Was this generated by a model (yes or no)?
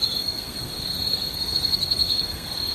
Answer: yes